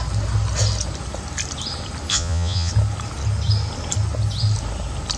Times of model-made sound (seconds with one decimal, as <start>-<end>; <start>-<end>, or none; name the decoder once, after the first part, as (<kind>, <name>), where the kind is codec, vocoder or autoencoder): 2.1-2.7 (vocoder, Vocos)